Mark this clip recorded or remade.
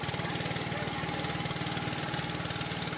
recorded